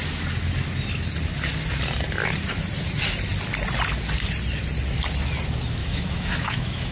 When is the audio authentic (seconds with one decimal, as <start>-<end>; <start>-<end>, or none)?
0.0-5.8